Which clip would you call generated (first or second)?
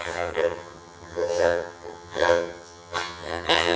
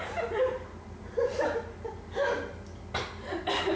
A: first